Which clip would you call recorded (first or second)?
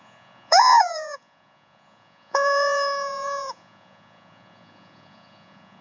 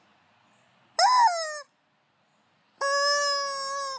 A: second